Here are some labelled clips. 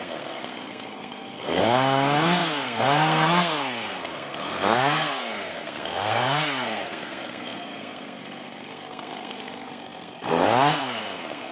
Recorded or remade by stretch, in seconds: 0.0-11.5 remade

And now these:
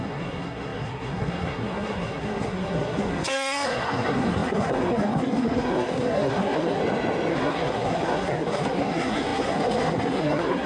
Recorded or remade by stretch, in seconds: 0.0-6.8 remade; 6.8-7.3 recorded; 7.3-10.7 remade

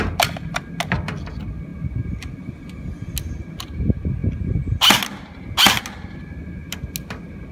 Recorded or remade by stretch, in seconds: 0.0-7.5 recorded